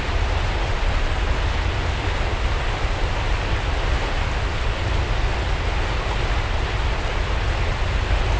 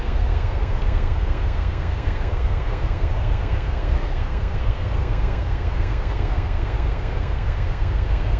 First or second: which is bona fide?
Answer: first